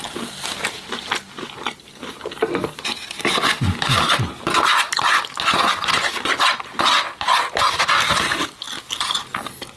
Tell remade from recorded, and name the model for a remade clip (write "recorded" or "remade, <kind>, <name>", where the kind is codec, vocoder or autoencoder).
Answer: recorded